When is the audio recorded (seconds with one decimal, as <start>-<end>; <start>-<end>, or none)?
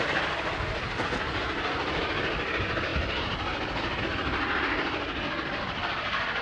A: 0.0-6.4